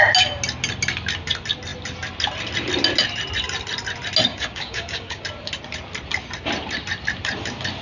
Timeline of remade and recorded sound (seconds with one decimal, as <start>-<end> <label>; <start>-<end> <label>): 0.0-4.3 recorded; 4.3-5.2 remade; 5.2-7.8 recorded

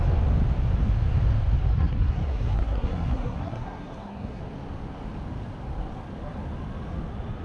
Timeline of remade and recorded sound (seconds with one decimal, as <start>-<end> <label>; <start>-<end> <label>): 0.0-1.7 recorded; 1.7-4.4 remade; 4.4-7.4 recorded

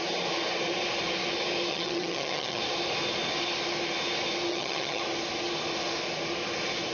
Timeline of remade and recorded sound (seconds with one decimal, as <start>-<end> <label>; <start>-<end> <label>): 0.0-1.7 recorded; 1.7-2.6 remade; 2.6-4.5 recorded; 4.5-5.0 remade; 5.0-6.9 recorded

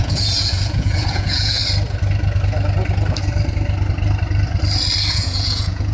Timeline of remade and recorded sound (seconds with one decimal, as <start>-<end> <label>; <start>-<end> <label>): 0.0-1.6 remade; 1.6-5.1 recorded; 5.1-5.9 remade

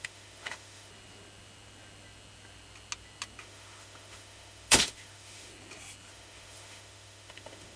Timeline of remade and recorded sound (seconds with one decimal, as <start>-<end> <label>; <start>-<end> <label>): 0.0-0.9 remade; 0.9-3.4 recorded; 3.4-5.5 remade; 5.5-6.1 recorded; 6.1-7.8 remade